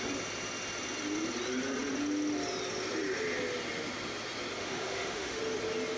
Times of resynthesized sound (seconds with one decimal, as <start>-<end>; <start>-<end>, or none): 4.6-5.4